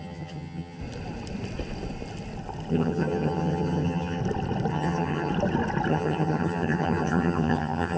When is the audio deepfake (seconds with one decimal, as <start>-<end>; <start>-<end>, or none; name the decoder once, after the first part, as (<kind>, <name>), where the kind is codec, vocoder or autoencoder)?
0.0-0.8 (vocoder, HiFi-GAN); 2.7-4.2; 4.7-5.3; 5.9-8.0